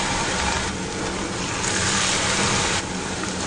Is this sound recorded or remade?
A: recorded